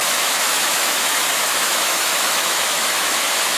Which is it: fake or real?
fake